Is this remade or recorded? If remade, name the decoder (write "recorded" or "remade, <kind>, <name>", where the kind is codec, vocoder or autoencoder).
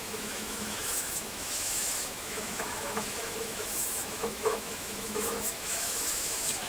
remade, autoencoder, DAC-VAE